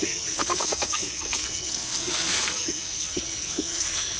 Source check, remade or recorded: remade